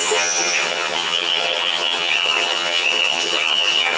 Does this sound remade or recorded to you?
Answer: remade